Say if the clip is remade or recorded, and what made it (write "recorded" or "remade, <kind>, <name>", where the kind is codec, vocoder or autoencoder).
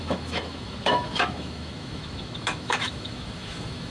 remade, autoencoder, DAC-VAE